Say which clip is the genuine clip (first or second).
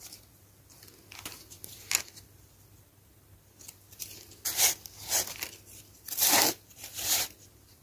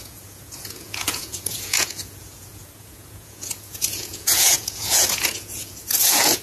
first